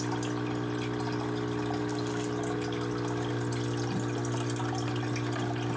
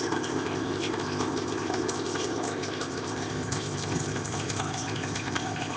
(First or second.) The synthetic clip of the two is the second